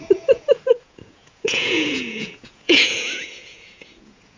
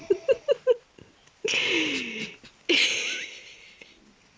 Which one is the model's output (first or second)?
first